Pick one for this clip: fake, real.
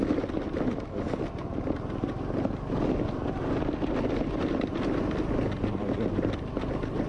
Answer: real